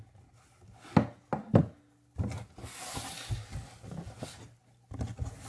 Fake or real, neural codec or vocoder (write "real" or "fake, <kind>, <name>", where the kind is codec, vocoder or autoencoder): real